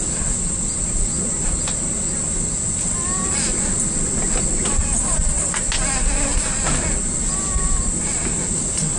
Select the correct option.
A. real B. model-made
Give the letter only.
A